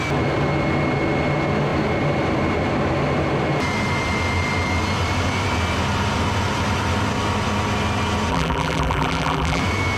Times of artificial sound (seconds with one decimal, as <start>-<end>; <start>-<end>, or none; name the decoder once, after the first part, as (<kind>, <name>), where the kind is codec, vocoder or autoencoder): 8.3-9.6 (vocoder, BigVGAN v2)